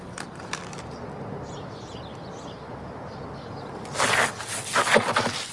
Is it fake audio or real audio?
real